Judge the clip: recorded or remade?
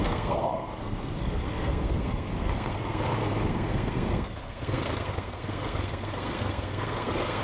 remade